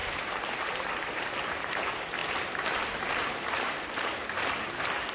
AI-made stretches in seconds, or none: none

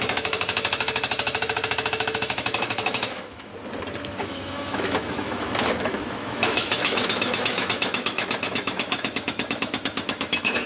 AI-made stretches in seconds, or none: 0.0-3.5 (autoencoder, DAC-VAE); 4.2-10.7

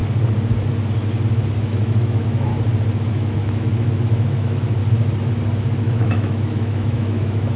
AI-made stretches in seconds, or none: 1.6-2.5 (autoencoder, DAC-VAE); 3.1-4.8; 5.8-7.6